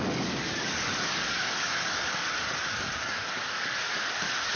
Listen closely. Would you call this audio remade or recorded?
remade